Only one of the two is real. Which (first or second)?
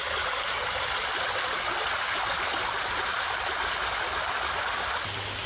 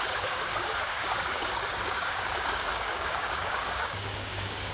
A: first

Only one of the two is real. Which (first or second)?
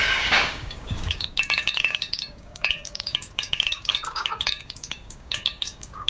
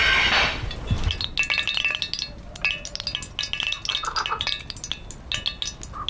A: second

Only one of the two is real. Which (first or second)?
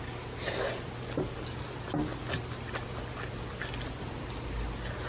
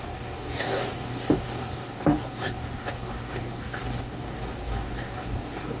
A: first